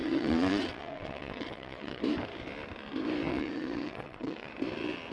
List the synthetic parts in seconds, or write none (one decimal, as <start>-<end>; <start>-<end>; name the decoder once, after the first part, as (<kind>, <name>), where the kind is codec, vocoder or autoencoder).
0.0-2.0 (vocoder, WaveNeXt); 3.3-4.5